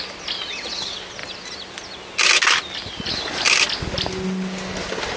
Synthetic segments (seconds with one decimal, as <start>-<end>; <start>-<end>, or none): none